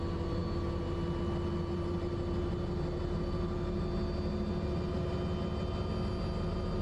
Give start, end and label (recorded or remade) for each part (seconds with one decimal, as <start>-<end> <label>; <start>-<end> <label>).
0.0-6.8 recorded

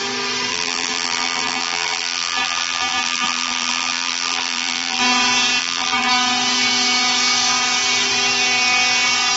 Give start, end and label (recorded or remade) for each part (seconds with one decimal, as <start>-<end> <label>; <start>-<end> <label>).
0.0-0.5 recorded; 0.5-5.0 remade; 5.0-5.6 recorded; 5.6-6.1 remade; 6.1-9.4 recorded

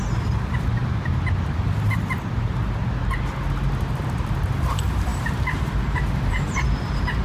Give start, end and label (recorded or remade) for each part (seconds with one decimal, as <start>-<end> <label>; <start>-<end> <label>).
0.0-0.8 remade; 0.8-2.1 recorded; 2.1-2.8 remade; 2.8-3.9 recorded; 3.9-7.2 remade